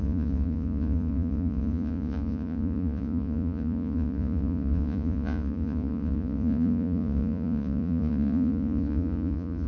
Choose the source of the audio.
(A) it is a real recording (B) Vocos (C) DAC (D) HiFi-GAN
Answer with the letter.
B